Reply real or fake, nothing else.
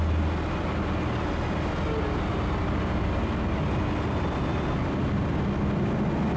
real